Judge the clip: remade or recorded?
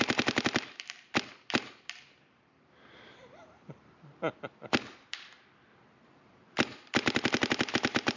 remade